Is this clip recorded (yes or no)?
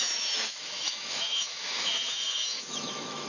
no